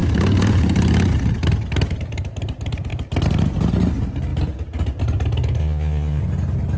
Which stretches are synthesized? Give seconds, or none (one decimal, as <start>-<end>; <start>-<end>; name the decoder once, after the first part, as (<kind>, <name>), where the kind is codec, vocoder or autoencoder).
5.6-6.2 (vocoder, Vocos)